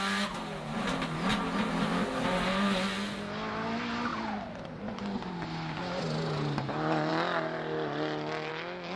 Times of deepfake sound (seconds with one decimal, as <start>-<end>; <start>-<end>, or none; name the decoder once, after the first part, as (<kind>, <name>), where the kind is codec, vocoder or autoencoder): 1.3-1.9 (vocoder, BigVGAN v2)